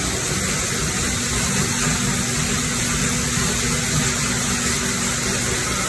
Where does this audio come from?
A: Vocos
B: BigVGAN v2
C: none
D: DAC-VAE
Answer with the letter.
C